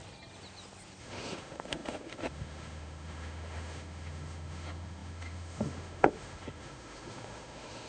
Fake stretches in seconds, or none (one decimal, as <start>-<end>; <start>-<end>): 1.0-7.9